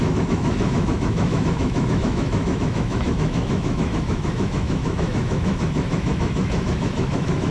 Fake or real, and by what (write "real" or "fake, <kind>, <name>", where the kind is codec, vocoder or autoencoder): fake, autoencoder, DAC-VAE